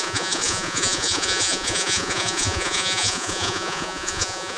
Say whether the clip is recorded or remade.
remade